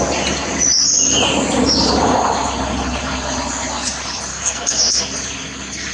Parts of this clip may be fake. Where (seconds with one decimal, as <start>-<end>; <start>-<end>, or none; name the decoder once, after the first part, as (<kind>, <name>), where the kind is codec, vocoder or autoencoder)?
4.3-5.0 (codec, SNAC)